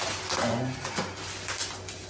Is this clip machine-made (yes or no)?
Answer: no